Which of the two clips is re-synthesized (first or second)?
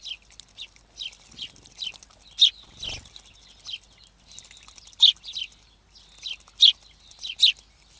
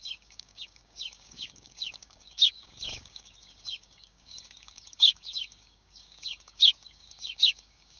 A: second